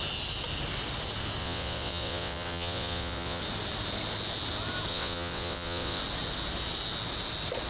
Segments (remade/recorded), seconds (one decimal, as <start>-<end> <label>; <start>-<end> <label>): 0.0-1.4 recorded; 1.4-3.4 remade; 3.4-4.9 recorded; 4.9-6.0 remade; 6.0-7.7 recorded